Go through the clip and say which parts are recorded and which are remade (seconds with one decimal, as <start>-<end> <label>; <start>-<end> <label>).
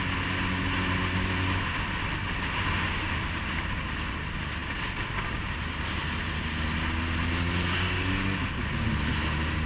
0.0-9.7 recorded